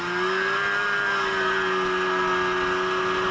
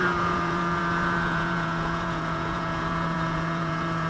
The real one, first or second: first